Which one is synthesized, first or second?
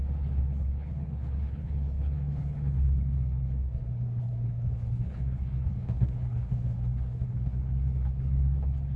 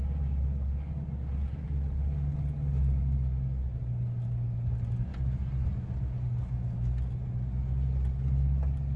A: first